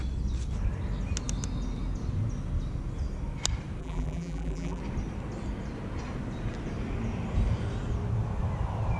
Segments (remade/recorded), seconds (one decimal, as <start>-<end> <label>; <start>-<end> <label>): 0.0-3.8 recorded; 3.8-4.8 remade; 4.8-9.0 recorded